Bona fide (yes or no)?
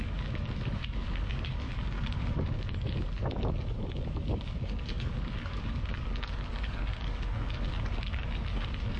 no